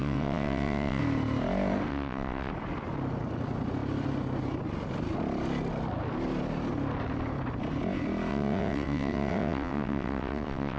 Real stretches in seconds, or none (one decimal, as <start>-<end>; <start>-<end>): 1.0-1.9; 2.5-8.3